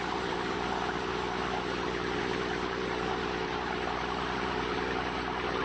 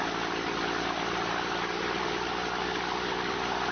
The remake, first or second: first